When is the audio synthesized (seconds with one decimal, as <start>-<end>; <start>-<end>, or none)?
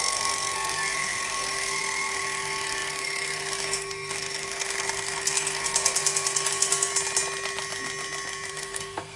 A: 0.0-6.9; 8.5-9.2